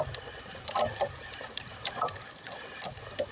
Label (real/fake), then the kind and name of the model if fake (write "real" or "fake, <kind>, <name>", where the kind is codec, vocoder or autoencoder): fake, vocoder, BigVGAN v2